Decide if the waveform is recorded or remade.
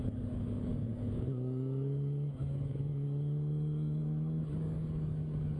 remade